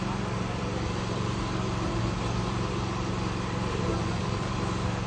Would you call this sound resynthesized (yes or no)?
yes